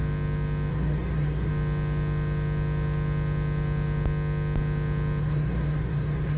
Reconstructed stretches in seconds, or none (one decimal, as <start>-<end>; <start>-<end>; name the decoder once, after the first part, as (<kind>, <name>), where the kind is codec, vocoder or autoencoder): 0.7-1.5 (codec, SNAC); 5.2-6.4